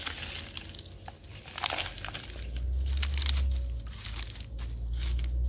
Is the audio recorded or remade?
recorded